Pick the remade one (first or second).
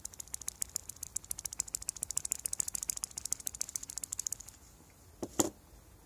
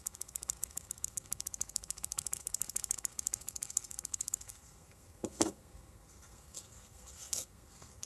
second